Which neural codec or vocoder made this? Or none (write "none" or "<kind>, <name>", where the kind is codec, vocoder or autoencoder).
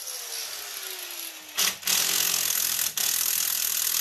none